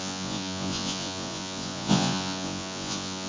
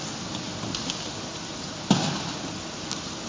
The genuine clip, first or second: second